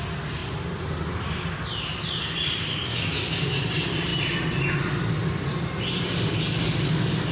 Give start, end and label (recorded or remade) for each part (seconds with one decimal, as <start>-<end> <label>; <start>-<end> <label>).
0.0-0.4 recorded; 0.4-1.2 remade; 1.2-1.9 recorded; 1.9-2.8 remade; 2.8-7.3 recorded